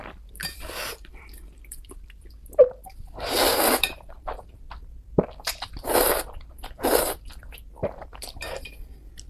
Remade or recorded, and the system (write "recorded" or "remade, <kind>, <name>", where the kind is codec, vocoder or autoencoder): remade, vocoder, BigVGAN v2